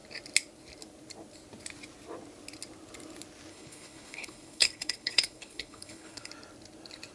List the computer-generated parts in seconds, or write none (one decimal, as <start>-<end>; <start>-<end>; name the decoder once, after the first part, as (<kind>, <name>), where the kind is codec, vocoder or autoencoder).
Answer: 3.5-6.3 (codec, HILCodec)